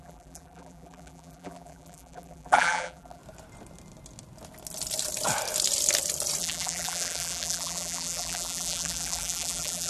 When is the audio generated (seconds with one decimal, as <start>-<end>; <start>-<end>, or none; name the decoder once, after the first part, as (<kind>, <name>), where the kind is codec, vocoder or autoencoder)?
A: 0.0-3.2 (vocoder, BigVGAN v2); 6.4-9.9